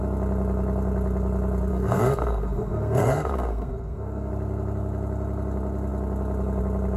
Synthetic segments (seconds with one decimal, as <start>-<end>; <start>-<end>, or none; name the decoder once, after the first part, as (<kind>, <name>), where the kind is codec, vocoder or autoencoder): 1.7-4.3 (codec, SNAC)